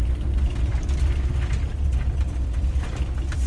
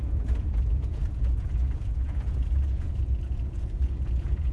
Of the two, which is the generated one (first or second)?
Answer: second